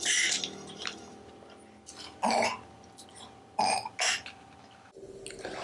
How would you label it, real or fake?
real